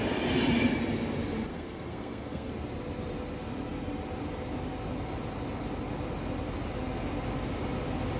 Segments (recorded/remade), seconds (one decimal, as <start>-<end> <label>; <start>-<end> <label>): 0.0-1.5 recorded; 1.5-2.5 remade; 2.5-8.2 recorded